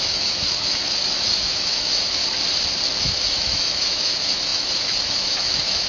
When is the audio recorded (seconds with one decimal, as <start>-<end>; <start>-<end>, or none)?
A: 2.2-3.0